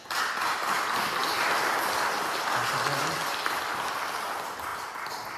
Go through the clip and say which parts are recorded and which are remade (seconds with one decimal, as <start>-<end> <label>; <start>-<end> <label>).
0.0-5.4 recorded